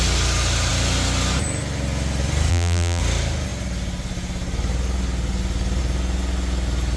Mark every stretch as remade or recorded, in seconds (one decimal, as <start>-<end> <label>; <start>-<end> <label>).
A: 0.0-2.5 recorded; 2.5-3.0 remade; 3.0-7.0 recorded